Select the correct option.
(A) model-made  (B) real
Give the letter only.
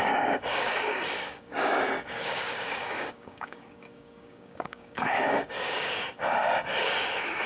A